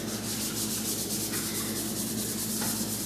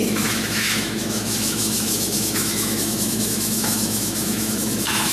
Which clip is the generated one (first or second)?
second